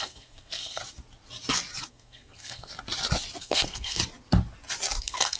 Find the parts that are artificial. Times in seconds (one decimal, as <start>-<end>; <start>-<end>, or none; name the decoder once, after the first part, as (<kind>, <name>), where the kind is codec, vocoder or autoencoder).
0.0-0.8 (codec, SNAC); 1.9-2.7; 3.4-4.0; 5.0-5.4